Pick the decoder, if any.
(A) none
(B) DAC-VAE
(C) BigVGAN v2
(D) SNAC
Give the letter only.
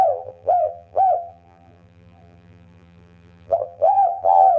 C